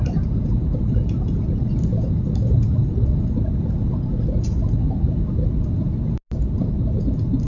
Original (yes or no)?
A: yes